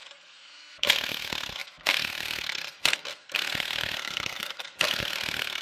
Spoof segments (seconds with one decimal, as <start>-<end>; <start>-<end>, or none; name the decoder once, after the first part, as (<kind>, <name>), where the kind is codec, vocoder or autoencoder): 0.0-5.6 (codec, SNAC)